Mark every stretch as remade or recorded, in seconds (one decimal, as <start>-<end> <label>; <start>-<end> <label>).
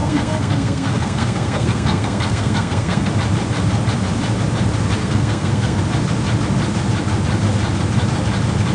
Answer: 0.0-3.1 remade; 3.1-5.0 recorded; 5.0-5.8 remade; 5.8-8.7 recorded